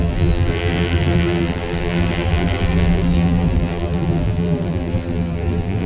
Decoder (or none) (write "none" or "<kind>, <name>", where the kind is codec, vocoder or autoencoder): vocoder, BigVGAN v2